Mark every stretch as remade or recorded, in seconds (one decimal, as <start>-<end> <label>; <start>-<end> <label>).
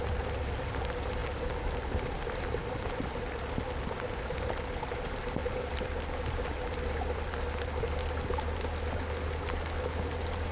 0.0-5.4 recorded; 5.4-7.3 remade; 7.3-10.5 recorded